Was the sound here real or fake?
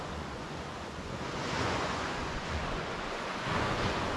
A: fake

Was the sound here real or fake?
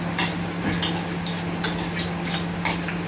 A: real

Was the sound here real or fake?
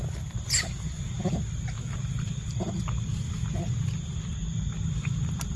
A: real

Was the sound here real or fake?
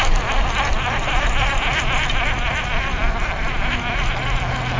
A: real